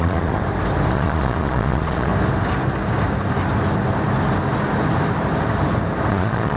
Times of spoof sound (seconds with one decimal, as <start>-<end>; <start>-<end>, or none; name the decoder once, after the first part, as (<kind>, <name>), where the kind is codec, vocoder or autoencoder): 0.0-0.4 (vocoder, Vocos); 0.9-2.1; 6.1-6.6